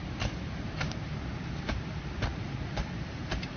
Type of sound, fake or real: fake